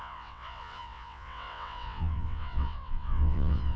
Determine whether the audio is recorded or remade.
remade